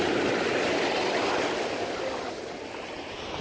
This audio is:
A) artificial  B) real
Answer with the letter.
B